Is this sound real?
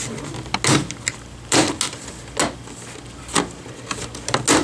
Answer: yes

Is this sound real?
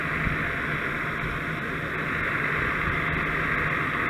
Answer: yes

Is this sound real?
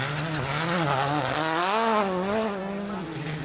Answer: yes